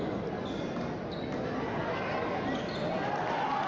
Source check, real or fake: real